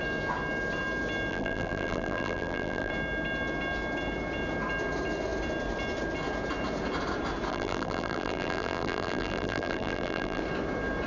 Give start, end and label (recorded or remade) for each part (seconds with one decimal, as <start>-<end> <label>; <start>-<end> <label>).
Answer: 0.0-1.3 recorded; 1.3-2.9 remade; 2.9-7.5 recorded; 7.5-10.4 remade; 10.4-11.1 recorded

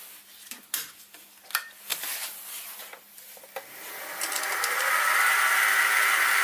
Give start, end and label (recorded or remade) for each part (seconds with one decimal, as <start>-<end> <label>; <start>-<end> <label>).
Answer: 0.0-6.4 recorded